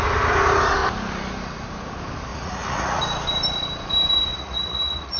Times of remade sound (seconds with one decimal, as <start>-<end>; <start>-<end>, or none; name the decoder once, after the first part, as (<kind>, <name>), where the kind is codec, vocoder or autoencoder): 2.3-3.0 (vocoder, Vocos); 4.3-5.2